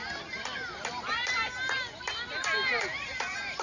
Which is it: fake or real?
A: real